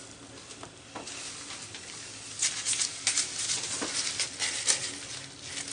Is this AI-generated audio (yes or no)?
no